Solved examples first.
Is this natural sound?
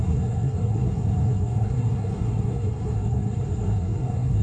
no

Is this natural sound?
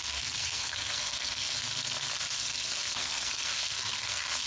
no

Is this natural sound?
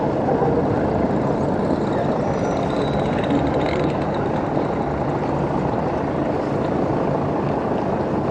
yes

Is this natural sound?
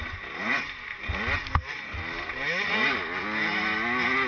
yes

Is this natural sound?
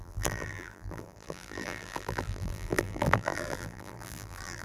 no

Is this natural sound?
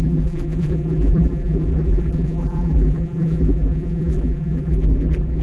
no